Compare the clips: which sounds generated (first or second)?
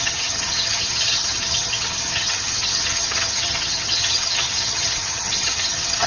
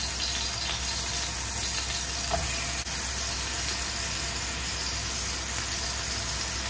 first